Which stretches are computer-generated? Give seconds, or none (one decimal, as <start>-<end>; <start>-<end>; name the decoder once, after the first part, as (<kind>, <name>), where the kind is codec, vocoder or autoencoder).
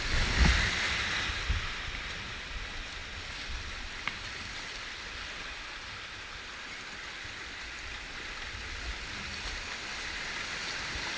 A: 3.0-6.6 (vocoder, BigVGAN v2)